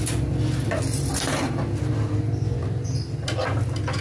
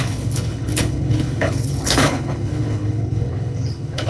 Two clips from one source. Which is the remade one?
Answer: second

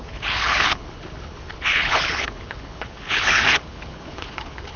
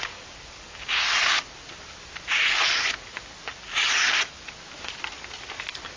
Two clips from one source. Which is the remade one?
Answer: first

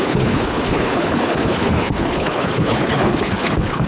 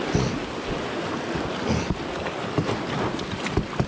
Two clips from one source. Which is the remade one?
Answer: first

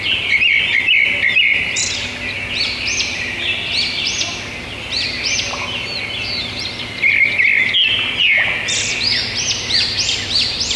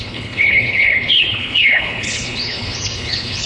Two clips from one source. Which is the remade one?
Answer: second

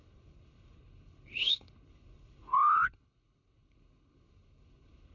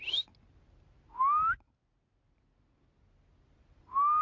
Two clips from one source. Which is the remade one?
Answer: first